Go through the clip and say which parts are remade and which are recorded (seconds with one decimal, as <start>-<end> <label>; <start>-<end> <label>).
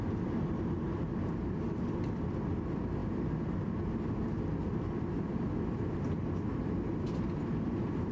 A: 0.0-8.1 recorded